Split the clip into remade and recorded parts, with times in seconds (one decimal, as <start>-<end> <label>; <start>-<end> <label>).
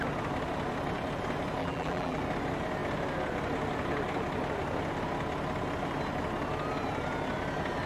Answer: 0.0-1.6 recorded; 1.6-2.2 remade; 2.2-7.9 recorded